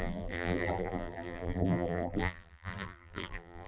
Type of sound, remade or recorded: remade